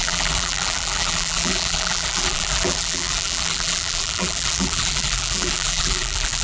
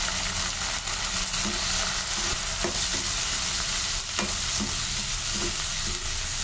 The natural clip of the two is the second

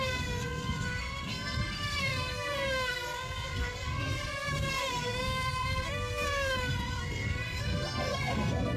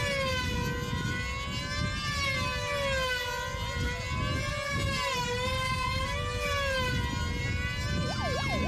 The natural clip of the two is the second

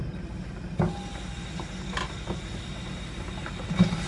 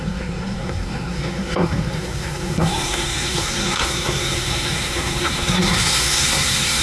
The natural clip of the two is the first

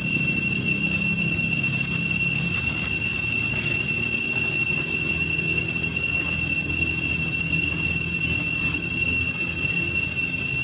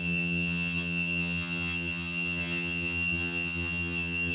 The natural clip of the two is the first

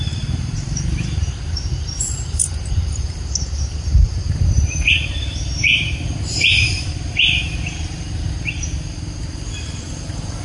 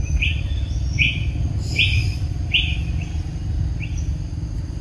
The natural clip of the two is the second